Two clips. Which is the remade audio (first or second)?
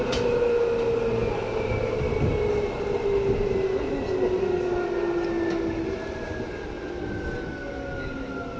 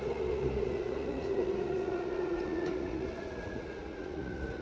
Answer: second